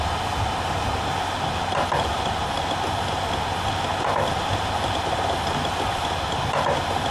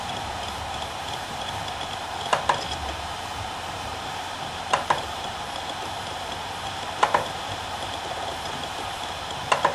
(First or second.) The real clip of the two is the first